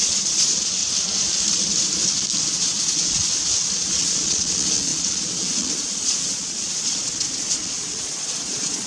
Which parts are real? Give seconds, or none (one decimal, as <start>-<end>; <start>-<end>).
0.8-2.5; 3.3-3.9